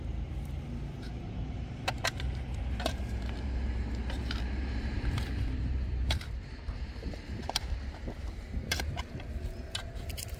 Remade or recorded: remade